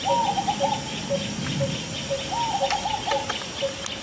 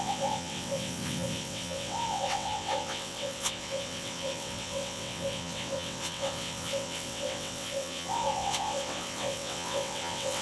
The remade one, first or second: second